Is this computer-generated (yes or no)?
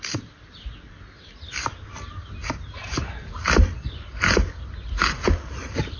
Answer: no